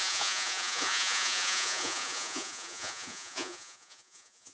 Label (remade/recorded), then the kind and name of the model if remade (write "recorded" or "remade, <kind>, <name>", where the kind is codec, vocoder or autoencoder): remade, vocoder, Vocos